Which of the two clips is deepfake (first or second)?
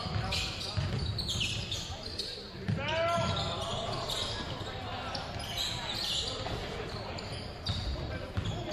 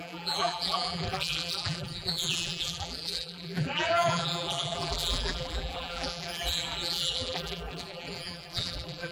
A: second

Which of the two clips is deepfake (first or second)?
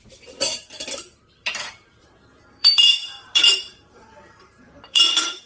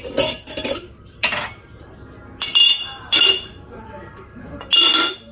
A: first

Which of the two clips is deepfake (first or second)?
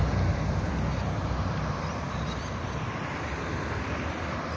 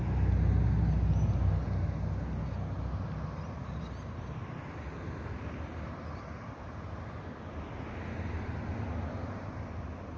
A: first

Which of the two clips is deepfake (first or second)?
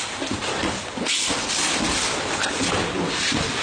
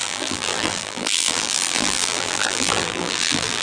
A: second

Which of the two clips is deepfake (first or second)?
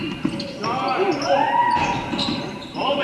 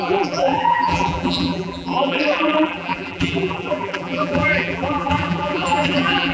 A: second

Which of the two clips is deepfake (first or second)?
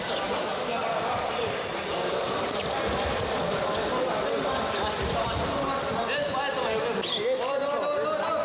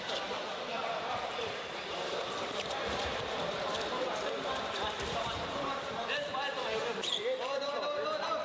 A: second